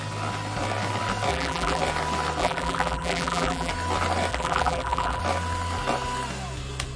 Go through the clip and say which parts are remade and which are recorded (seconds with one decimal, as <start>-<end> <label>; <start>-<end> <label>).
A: 0.0-1.3 recorded; 1.3-1.8 remade; 1.8-2.4 recorded; 2.4-3.7 remade; 3.7-4.3 recorded; 4.3-5.2 remade; 5.2-7.0 recorded